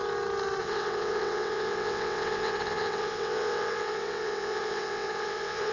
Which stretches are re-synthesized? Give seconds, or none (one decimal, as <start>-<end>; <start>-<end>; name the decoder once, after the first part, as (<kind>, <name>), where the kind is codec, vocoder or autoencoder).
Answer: 0.6-5.7 (vocoder, WaveNeXt)

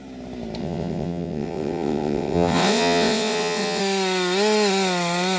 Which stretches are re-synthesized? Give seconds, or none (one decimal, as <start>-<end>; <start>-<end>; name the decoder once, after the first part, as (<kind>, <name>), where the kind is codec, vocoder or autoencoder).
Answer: 0.6-3.8 (vocoder, WaveNeXt)